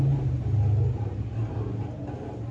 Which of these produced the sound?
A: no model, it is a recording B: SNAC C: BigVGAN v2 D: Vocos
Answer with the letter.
A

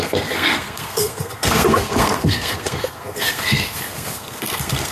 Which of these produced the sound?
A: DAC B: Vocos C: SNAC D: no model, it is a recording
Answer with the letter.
C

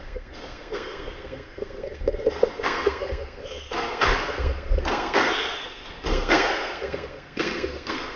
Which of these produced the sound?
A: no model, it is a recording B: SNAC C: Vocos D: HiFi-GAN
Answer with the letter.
B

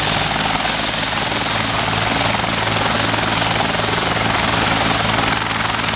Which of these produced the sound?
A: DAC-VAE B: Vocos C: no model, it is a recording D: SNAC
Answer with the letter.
C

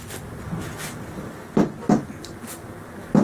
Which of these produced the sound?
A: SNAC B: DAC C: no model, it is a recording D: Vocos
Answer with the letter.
C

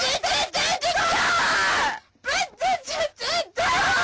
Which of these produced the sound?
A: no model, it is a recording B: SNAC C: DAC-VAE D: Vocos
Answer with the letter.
A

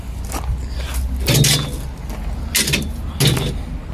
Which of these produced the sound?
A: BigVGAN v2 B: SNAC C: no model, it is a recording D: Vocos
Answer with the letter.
C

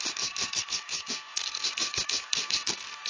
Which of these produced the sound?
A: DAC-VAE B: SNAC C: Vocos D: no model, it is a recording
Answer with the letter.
B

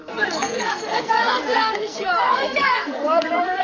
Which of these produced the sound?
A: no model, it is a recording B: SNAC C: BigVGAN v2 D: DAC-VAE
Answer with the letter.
B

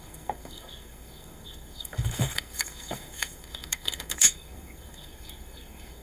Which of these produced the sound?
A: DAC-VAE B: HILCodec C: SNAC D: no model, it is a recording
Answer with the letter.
C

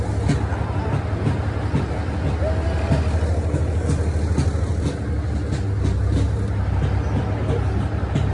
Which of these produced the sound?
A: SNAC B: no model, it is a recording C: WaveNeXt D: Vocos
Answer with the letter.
B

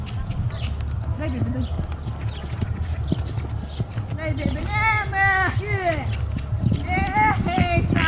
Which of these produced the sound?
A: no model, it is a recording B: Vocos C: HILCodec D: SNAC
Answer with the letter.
A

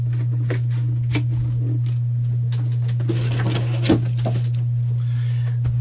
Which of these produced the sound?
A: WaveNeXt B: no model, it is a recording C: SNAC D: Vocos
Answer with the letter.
B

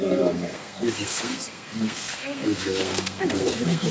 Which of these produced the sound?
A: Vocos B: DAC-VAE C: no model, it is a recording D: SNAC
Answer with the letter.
D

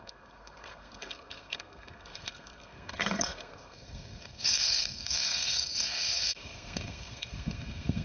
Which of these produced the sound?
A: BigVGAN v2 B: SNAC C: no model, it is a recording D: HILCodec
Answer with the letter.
B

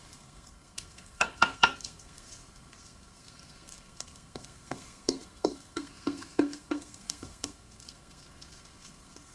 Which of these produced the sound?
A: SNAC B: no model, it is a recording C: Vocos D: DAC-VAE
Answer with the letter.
A